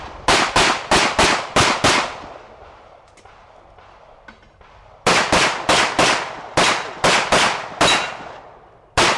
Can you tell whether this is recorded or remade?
recorded